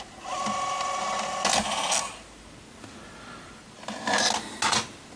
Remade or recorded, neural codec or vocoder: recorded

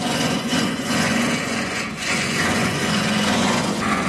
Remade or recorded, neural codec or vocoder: remade, vocoder, Vocos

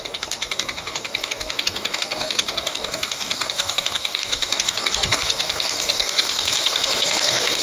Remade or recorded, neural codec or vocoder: remade, codec, DAC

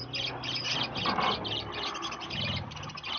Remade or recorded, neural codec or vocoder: recorded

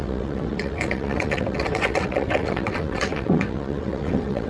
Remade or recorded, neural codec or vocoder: remade, vocoder, WaveNeXt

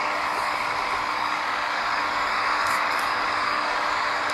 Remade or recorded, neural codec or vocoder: remade, codec, DAC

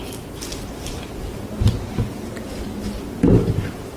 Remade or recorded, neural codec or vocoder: recorded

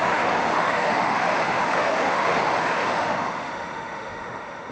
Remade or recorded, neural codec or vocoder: remade, autoencoder, DAC-VAE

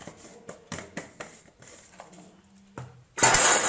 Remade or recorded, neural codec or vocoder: recorded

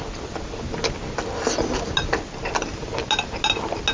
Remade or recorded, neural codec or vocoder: recorded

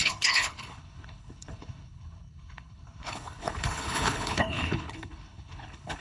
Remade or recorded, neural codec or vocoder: remade, codec, HILCodec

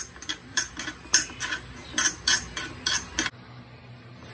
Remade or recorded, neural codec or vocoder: recorded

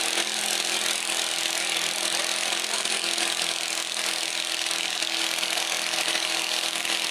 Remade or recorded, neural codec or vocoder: remade, codec, DAC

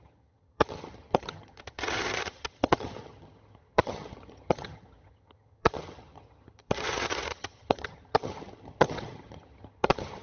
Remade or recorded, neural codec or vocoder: remade, vocoder, HiFi-GAN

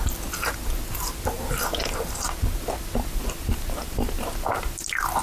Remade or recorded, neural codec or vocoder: recorded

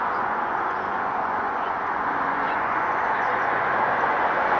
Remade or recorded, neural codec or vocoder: remade, vocoder, Vocos